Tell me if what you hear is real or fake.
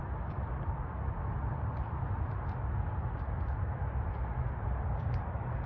real